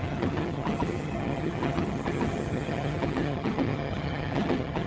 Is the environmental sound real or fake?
fake